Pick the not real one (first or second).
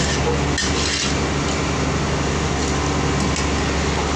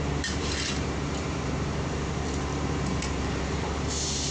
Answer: second